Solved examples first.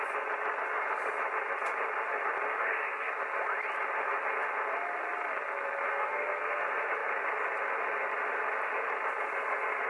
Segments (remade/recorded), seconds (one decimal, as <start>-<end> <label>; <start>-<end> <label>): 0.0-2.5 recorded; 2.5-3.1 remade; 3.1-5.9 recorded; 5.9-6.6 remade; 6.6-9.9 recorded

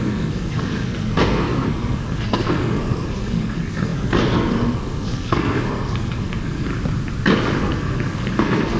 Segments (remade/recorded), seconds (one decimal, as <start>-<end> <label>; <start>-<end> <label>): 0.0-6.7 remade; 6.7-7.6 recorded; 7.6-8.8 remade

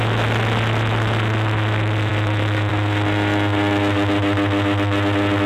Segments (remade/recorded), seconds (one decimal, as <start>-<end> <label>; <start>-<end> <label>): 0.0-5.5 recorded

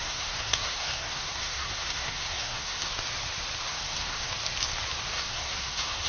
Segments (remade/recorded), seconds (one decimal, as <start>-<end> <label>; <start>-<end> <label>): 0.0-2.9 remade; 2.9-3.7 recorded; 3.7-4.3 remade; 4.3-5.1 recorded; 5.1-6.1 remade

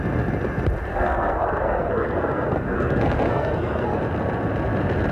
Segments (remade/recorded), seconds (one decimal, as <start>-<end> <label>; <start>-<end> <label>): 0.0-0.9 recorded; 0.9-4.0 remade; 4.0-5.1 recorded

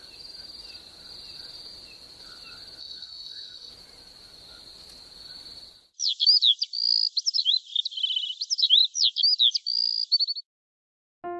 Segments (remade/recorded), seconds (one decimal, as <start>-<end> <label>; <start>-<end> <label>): 0.0-2.8 recorded; 2.8-3.7 remade; 3.7-11.4 recorded